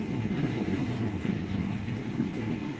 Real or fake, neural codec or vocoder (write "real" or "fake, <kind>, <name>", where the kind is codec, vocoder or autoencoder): fake, codec, SNAC